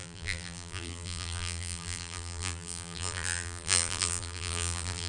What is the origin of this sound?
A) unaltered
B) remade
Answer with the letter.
B